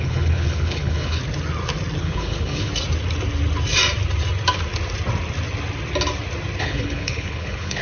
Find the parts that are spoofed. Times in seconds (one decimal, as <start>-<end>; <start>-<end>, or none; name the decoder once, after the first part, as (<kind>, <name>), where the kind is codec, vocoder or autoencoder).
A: 0.0-1.2 (codec, HILCodec); 2.0-2.7; 6.6-7.8